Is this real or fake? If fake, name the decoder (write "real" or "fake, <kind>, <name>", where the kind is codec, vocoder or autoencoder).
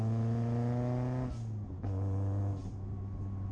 real